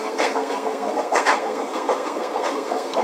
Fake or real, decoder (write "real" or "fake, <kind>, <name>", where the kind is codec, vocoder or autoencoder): fake, codec, SNAC